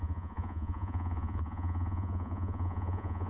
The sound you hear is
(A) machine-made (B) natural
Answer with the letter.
A